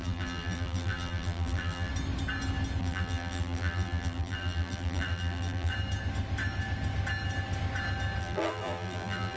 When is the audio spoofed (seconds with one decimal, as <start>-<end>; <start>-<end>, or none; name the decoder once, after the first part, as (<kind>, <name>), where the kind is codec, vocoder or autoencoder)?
0.0-1.9 (vocoder, BigVGAN v2); 2.8-5.7; 8.2-9.4